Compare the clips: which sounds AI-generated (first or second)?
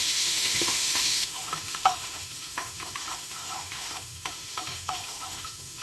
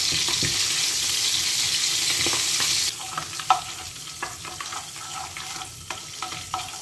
first